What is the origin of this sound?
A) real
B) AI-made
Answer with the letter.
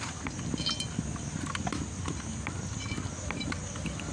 A